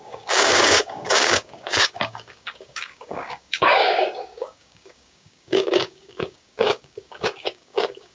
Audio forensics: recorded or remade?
remade